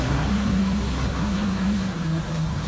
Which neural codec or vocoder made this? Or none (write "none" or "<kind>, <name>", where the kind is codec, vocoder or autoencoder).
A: codec, SNAC